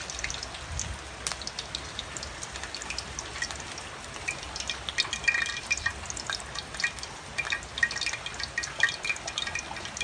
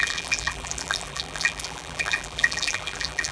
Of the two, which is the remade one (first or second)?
second